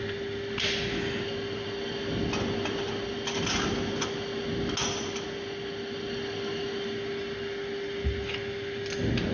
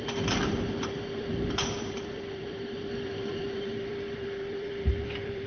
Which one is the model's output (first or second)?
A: second